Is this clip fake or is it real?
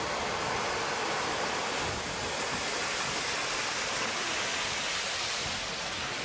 real